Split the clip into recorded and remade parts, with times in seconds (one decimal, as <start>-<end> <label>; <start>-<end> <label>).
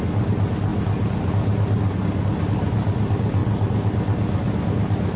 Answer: 0.0-5.2 recorded